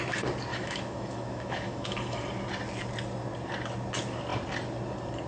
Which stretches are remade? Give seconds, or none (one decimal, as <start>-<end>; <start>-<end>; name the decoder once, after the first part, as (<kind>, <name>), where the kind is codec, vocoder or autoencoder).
0.5-2.2 (autoencoder, DAC-VAE)